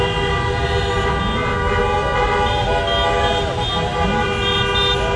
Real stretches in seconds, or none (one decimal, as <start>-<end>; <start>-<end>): 0.0-5.2